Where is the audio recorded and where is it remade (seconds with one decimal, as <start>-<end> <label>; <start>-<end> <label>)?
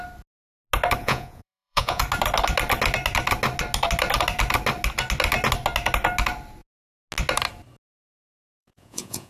0.0-1.0 recorded; 1.0-2.0 remade; 2.0-8.6 recorded; 8.6-9.3 remade